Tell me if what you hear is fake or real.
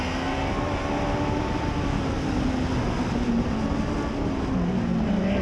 real